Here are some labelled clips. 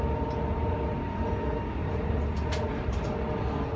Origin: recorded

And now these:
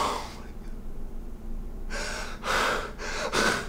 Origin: recorded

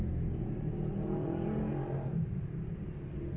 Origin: recorded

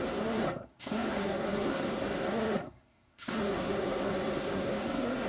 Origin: remade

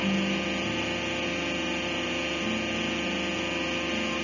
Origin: recorded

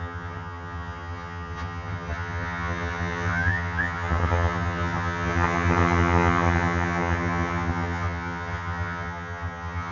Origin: remade